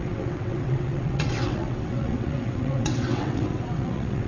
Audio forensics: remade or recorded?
remade